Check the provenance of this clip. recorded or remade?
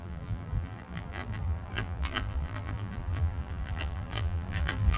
remade